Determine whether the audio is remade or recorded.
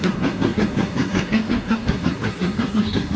remade